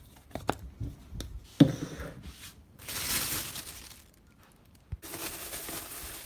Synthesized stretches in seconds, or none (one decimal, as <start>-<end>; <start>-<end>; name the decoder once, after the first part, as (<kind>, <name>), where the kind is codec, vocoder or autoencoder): 5.2-6.3 (vocoder, BigVGAN v2)